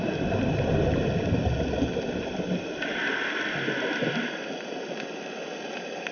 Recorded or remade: recorded